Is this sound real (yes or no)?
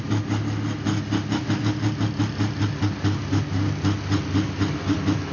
yes